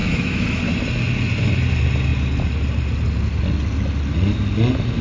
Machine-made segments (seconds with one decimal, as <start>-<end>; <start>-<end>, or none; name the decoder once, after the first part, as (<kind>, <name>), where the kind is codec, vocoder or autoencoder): 0.0-0.6 (autoencoder, DAC-VAE)